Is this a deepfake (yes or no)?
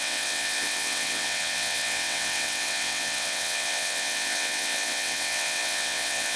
yes